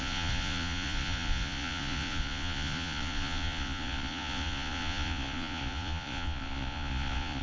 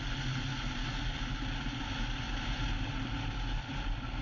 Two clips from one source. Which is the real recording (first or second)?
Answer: second